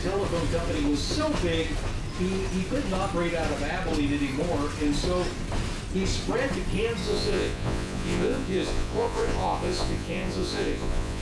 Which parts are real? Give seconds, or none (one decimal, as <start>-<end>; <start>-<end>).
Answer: 0.0-7.0